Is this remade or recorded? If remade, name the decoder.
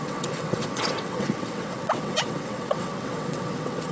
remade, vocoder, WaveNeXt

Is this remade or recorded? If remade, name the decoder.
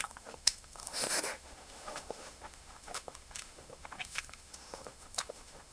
remade, autoencoder, DAC-VAE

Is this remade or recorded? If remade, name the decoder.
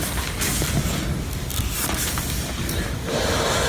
recorded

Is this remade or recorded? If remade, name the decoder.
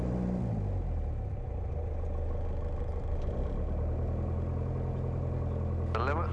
recorded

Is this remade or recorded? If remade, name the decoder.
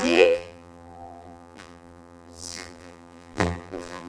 remade, vocoder, BigVGAN v2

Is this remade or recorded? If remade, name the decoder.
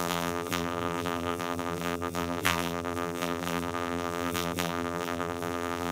remade, vocoder, BigVGAN v2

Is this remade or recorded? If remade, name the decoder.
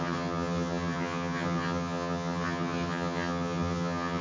remade, vocoder, HiFi-GAN